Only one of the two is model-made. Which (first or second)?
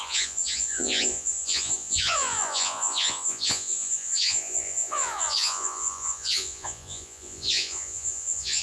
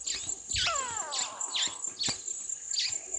first